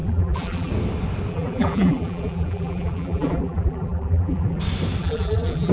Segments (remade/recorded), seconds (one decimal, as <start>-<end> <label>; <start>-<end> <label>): 0.0-0.7 remade; 0.7-1.3 recorded; 1.3-4.6 remade; 4.6-5.0 recorded; 5.0-5.7 remade